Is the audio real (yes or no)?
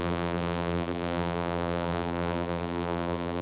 no